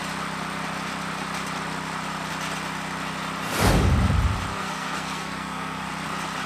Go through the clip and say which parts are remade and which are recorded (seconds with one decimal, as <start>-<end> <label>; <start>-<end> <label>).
0.0-4.5 recorded; 4.5-5.9 remade; 5.9-6.5 recorded